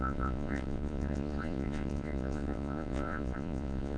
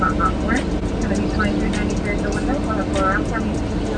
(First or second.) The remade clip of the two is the first